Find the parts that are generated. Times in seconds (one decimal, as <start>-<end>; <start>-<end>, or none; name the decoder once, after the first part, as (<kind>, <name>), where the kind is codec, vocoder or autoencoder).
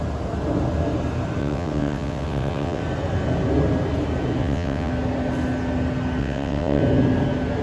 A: 1.4-2.8 (vocoder, WaveNeXt); 4.4-4.9; 6.2-6.8